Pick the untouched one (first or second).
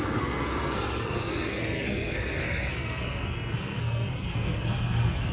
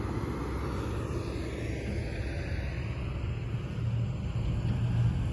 second